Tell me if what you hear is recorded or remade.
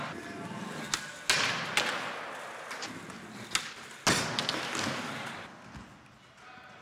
recorded